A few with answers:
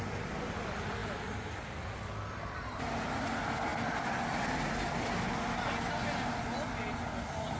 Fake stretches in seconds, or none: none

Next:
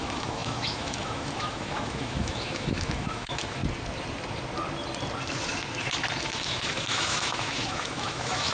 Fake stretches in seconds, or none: 0.0-3.6 (autoencoder, DAC-VAE); 6.2-8.5

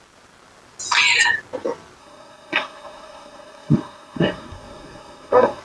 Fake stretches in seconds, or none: 2.0-5.6 (codec, SNAC)

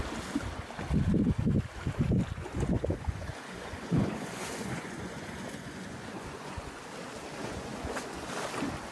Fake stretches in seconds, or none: 2.4-6.8 (vocoder, Vocos); 7.4-8.3

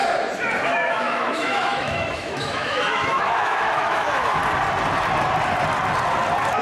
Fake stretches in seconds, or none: 0.6-4.4 (autoencoder, DAC-VAE)

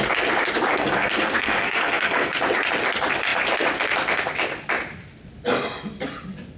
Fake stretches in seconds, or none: 0.7-2.4 (codec, SNAC)

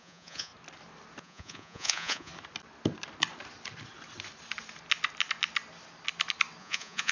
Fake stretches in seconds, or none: 0.0-0.5 (vocoder, Vocos); 1.2-2.3; 6.6-7.1